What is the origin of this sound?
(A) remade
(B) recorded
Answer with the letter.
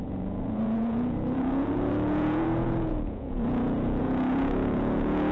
A